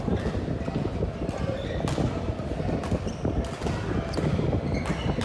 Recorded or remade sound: recorded